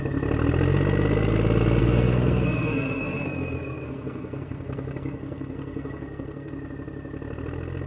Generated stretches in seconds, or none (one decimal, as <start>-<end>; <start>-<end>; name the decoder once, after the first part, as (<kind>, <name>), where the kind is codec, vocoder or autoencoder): 1.8-6.5 (codec, SNAC)